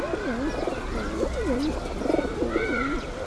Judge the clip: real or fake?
real